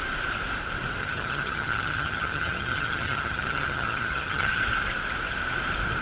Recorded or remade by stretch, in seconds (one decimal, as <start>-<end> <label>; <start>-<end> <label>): 0.0-1.0 recorded; 1.0-4.6 remade; 4.6-6.0 recorded